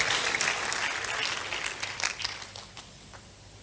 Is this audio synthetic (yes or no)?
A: no